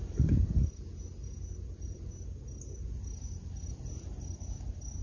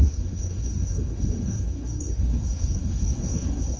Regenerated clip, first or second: second